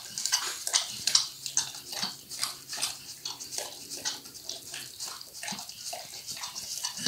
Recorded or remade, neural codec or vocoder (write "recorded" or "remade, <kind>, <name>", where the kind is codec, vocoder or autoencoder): remade, vocoder, BigVGAN v2